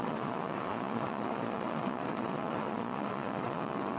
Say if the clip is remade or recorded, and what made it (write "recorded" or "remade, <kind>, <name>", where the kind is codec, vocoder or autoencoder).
remade, vocoder, Vocos